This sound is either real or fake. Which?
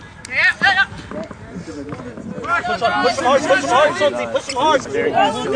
real